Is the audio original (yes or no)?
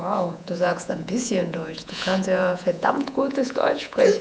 no